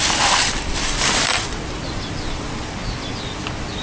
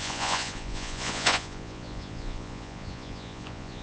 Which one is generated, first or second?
second